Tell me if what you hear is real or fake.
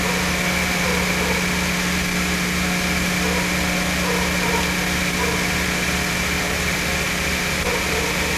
real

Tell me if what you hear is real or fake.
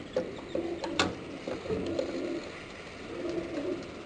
fake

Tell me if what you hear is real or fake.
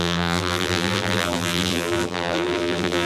fake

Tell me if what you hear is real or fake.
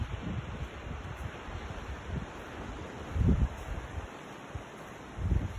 fake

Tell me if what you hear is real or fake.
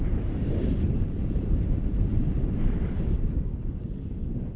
fake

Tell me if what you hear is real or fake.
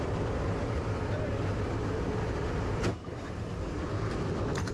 fake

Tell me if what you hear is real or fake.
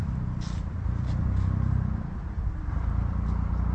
fake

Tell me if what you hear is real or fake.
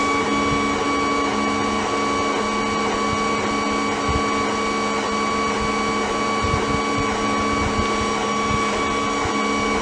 real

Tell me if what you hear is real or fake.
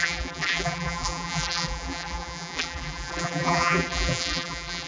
fake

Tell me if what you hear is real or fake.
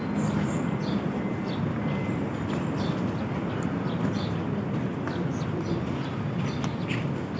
real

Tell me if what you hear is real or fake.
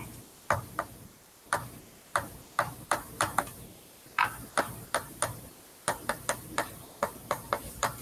fake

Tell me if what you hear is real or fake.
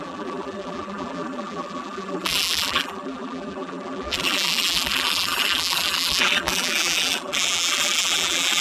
fake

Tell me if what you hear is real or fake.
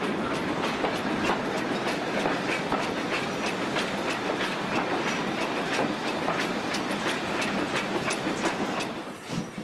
real